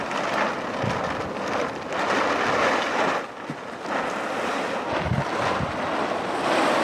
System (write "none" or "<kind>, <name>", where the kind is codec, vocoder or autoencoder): none